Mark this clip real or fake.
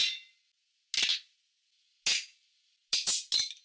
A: real